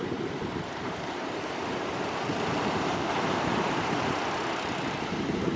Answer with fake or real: fake